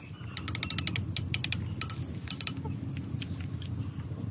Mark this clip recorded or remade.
recorded